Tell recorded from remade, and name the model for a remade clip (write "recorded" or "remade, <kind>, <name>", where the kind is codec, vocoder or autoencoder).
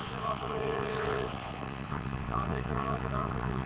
remade, vocoder, WaveNeXt